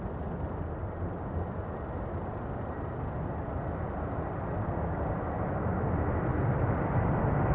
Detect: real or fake real